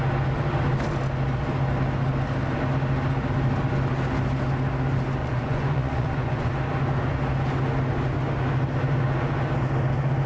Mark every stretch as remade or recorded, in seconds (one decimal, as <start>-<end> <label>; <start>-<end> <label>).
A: 0.0-5.2 recorded; 5.2-6.5 remade; 6.5-10.3 recorded

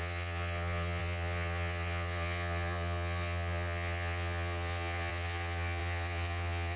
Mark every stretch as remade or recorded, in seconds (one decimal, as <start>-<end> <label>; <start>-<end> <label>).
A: 0.0-6.8 remade

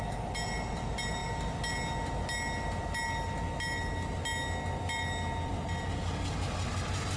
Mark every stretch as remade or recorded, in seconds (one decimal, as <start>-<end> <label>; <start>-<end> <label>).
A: 0.0-7.2 recorded

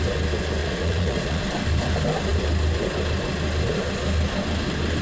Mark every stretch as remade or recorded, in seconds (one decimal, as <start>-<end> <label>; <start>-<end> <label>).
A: 0.0-0.6 recorded; 0.6-1.4 remade; 1.4-5.0 recorded

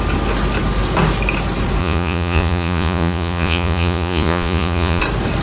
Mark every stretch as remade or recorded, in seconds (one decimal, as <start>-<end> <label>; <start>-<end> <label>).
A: 0.0-1.8 recorded; 1.8-5.0 remade; 5.0-5.4 recorded

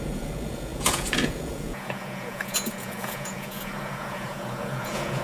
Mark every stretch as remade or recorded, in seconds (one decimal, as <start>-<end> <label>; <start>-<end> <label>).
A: 0.0-5.2 remade